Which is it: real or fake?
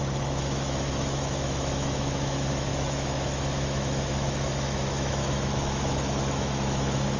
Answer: fake